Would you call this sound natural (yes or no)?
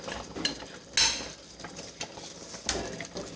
yes